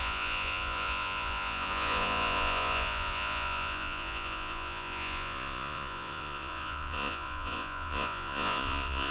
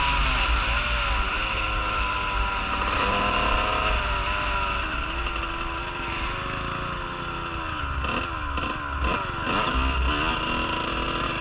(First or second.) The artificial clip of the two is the first